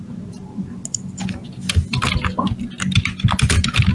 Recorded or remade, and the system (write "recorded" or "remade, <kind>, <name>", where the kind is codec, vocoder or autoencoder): recorded